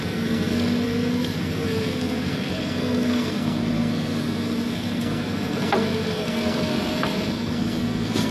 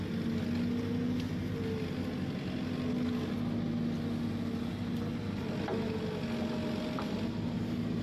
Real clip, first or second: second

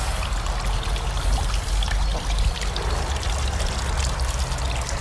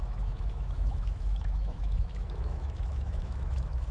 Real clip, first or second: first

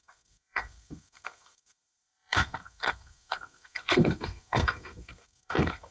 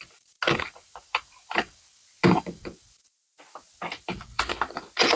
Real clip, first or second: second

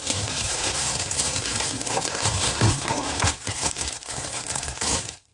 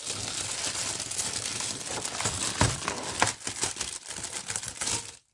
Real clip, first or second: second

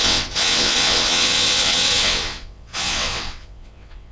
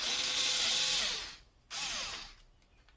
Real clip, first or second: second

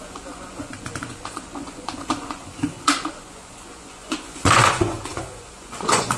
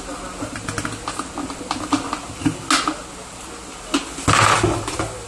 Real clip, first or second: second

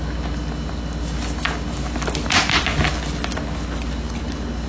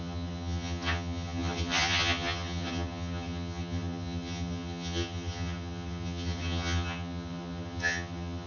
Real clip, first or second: first